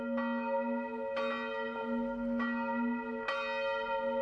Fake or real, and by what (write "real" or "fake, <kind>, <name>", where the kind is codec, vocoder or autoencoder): real